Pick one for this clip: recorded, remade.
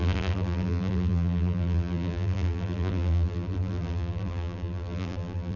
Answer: remade